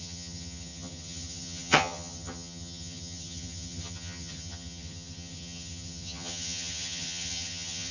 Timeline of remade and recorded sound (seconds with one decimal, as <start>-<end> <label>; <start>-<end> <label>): 0.0-7.9 remade